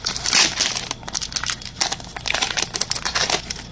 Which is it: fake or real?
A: real